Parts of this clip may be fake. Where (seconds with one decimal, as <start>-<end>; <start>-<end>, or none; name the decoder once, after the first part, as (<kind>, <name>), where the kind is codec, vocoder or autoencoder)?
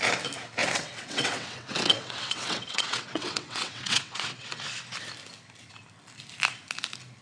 0.6-4.6 (vocoder, WaveNeXt)